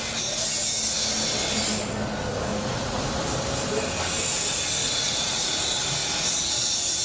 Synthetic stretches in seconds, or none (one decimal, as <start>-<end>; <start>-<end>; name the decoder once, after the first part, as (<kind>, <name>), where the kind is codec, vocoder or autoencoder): 2.5-3.1 (vocoder, Vocos); 4.8-5.5